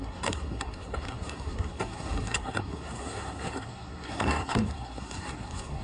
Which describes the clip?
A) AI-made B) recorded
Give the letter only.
A